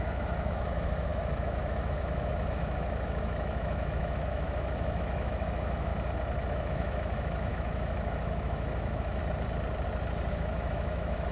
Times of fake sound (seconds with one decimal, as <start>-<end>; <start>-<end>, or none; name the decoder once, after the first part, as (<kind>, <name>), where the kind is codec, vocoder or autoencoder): 0.0-5.9 (autoencoder, DAC-VAE); 6.5-9.2; 10.3-11.3